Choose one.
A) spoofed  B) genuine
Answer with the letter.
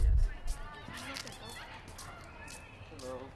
B